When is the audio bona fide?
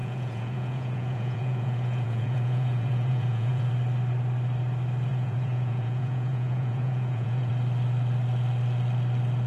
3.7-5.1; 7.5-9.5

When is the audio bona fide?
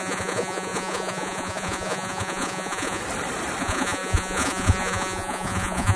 3.0-3.6